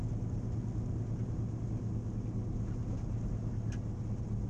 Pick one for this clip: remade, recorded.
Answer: recorded